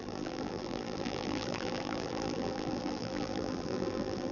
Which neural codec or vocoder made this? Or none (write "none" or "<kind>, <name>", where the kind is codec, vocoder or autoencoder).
vocoder, BigVGAN v2